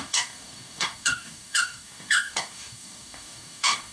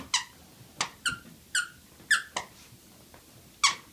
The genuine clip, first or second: second